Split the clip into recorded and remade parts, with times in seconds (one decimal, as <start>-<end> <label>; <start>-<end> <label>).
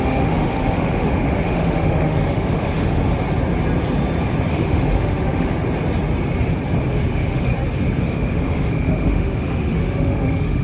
0.0-3.0 remade; 3.0-4.5 recorded; 4.5-5.5 remade; 5.5-6.9 recorded; 6.9-7.5 remade; 7.5-8.0 recorded; 8.0-10.6 remade